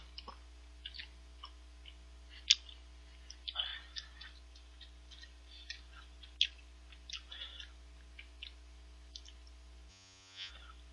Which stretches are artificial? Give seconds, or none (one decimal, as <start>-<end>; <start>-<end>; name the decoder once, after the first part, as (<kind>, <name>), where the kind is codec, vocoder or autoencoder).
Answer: 9.9-10.5 (vocoder, Vocos)

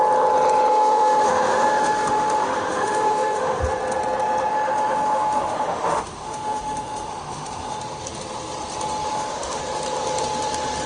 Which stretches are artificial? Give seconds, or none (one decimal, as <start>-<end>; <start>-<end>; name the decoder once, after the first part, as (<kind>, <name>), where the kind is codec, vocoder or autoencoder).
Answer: 0.7-3.6 (autoencoder, DAC-VAE); 4.5-7.8; 9.1-9.6

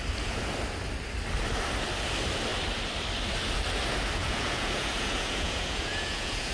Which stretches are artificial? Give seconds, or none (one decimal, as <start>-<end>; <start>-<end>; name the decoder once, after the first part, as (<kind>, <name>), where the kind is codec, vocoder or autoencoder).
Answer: 4.2-6.5 (vocoder, Vocos)

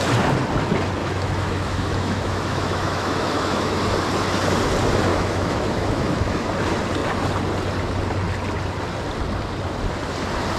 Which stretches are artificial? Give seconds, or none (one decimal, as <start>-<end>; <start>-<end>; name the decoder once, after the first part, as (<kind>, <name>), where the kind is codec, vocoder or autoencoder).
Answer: 1.0-3.8 (autoencoder, DAC-VAE); 5.1-6.5